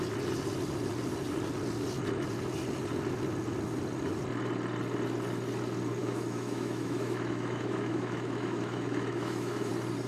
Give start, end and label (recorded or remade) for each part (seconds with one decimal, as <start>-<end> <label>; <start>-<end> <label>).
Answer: 0.0-6.0 recorded; 6.0-9.7 remade; 9.7-10.1 recorded